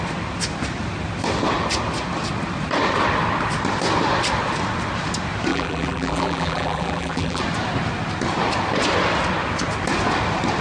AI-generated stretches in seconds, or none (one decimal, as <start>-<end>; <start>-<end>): 5.5-7.4